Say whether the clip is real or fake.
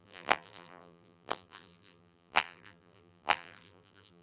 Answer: fake